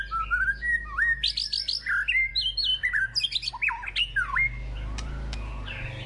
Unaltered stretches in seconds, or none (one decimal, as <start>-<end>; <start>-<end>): 0.0-6.1